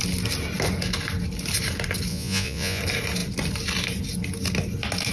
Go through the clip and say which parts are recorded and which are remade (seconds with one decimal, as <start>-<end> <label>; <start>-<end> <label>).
0.0-2.1 recorded; 2.1-2.8 remade; 2.8-5.1 recorded